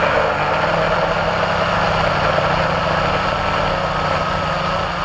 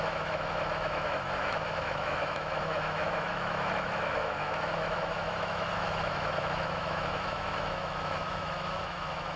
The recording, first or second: first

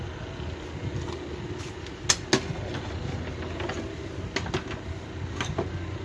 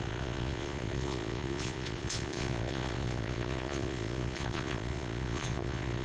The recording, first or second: first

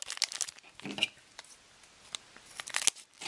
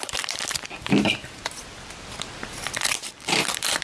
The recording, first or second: first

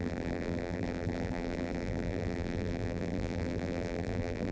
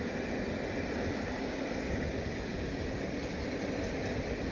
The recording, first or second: second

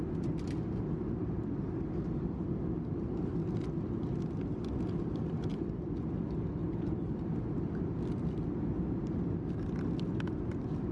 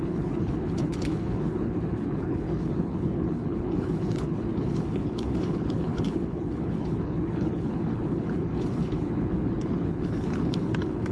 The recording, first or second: first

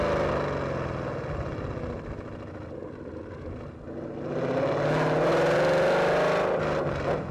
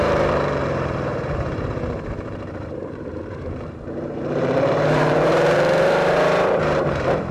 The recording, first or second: first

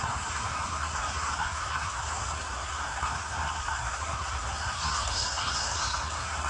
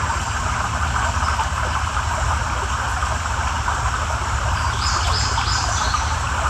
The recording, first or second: second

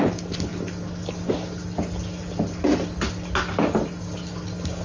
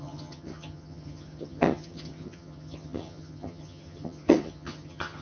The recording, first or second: first